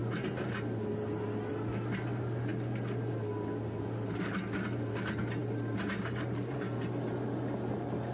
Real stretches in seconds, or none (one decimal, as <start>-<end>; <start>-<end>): 0.0-8.1